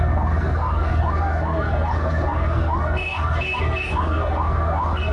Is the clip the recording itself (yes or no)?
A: no